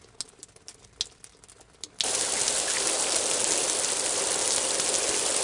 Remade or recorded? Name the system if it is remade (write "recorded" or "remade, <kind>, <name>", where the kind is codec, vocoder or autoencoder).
recorded